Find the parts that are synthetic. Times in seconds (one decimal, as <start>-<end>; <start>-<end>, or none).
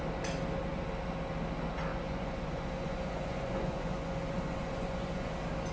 1.9-5.3